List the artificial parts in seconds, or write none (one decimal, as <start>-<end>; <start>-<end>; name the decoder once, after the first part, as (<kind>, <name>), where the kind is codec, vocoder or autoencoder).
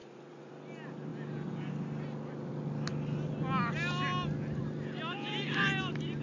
0.0-0.5 (vocoder, Vocos)